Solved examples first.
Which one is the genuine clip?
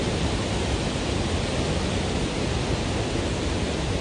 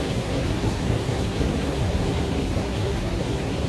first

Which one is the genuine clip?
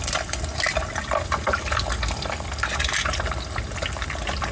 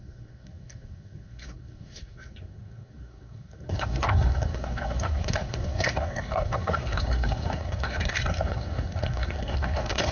first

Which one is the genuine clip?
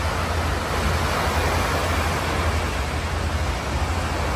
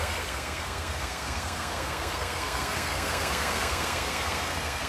first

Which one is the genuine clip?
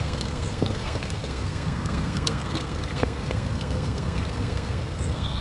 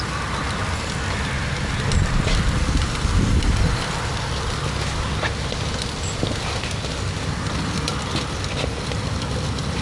second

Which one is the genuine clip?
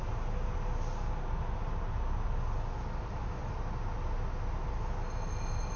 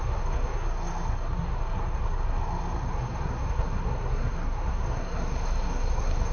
first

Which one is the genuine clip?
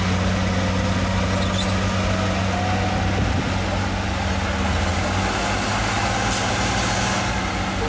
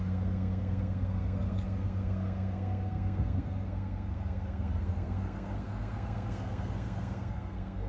first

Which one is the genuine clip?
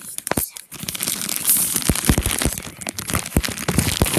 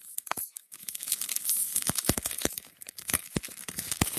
first